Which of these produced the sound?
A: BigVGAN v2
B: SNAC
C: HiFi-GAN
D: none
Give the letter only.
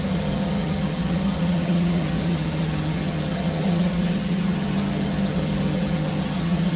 C